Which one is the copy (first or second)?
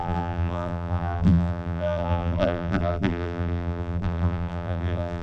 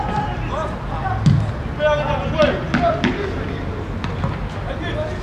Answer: first